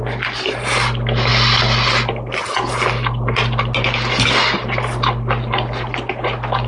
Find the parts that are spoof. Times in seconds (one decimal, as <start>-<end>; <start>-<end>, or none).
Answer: none